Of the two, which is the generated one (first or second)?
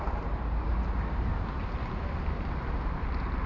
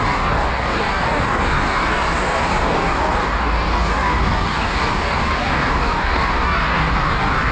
second